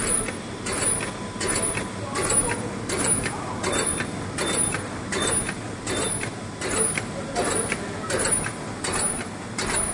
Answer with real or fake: real